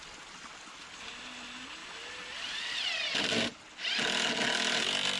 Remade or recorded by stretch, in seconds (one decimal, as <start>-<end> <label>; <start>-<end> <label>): 0.0-5.2 recorded